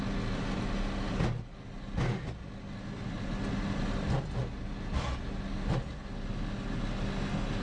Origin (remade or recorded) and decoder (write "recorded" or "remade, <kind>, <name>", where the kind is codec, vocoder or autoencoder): recorded